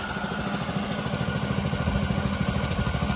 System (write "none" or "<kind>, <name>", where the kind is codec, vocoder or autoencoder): none